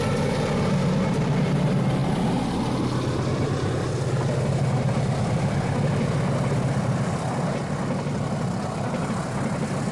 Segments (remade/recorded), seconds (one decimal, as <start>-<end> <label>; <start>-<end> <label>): 0.0-9.9 recorded